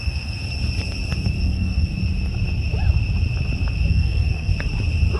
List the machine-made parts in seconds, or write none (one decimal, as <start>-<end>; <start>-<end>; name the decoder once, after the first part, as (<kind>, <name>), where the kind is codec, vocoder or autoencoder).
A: 0.0-0.4 (codec, SNAC); 1.4-1.9; 3.9-4.5